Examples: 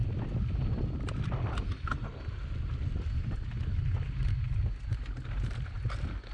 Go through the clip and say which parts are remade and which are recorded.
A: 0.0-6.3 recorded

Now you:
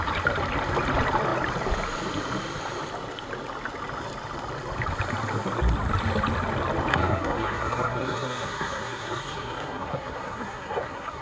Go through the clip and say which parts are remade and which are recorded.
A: 0.0-6.9 recorded; 6.9-11.2 remade

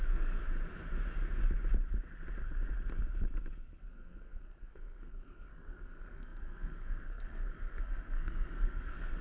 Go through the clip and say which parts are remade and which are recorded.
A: 0.0-0.4 remade; 0.4-3.9 recorded; 3.9-9.2 remade

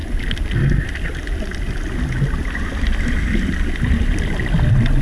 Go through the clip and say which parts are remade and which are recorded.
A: 0.0-5.0 recorded

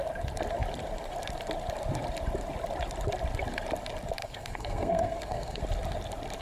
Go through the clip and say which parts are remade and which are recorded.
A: 0.0-4.2 recorded; 4.2-5.6 remade; 5.6-6.4 recorded

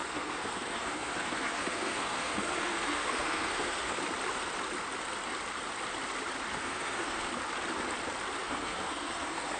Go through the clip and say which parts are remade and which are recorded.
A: 0.0-4.0 remade; 4.0-6.5 recorded; 6.5-7.3 remade; 7.3-8.4 recorded; 8.4-9.6 remade

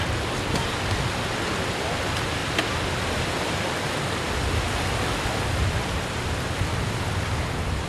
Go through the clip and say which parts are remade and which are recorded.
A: 0.0-7.9 recorded